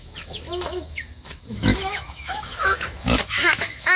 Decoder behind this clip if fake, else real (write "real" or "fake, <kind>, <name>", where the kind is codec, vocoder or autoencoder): fake, autoencoder, DAC-VAE